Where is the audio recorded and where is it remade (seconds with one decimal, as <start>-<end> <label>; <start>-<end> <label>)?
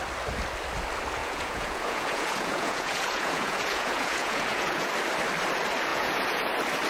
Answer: 0.0-1.2 recorded; 1.2-4.9 remade; 4.9-5.9 recorded; 5.9-6.5 remade; 6.5-6.9 recorded